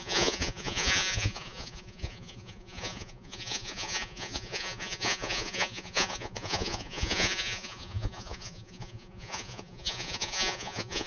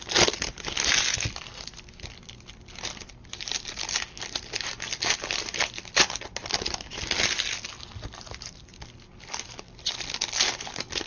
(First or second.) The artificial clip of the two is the first